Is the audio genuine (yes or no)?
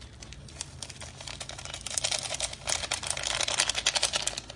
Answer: yes